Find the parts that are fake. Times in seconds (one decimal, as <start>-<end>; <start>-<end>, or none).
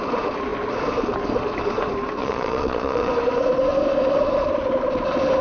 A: 2.2-3.1